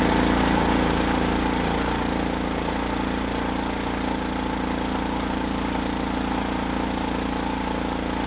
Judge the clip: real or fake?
real